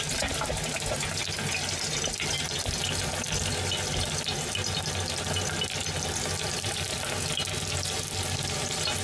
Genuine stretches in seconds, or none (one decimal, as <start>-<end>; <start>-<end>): 0.0-9.0